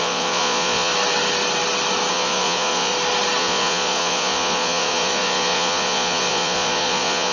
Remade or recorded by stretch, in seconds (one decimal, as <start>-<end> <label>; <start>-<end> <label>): 0.0-0.9 remade; 0.9-2.1 recorded; 2.1-2.9 remade; 2.9-3.4 recorded; 3.4-7.3 remade